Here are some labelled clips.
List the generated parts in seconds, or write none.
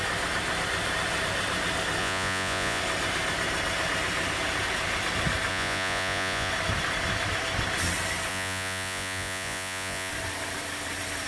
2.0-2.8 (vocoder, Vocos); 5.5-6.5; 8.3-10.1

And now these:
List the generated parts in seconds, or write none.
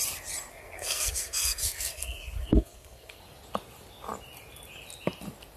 0.5-3.2 (codec, SNAC)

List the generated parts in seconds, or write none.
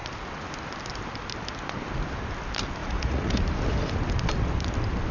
2.8-3.4 (vocoder, Vocos)